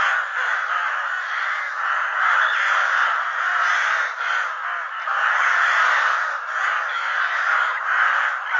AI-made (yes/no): no